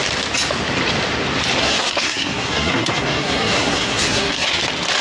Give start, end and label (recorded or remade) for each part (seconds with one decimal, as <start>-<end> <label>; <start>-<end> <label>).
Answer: 0.0-1.6 recorded; 1.6-4.6 remade; 4.6-5.0 recorded